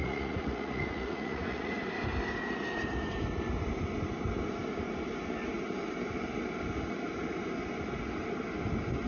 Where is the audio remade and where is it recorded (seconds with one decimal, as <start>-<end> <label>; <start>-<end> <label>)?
0.0-1.8 remade; 1.8-9.1 recorded